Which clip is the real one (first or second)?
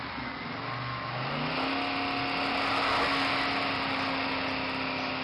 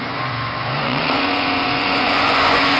first